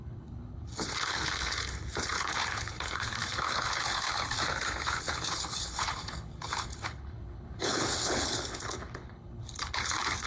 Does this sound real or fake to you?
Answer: fake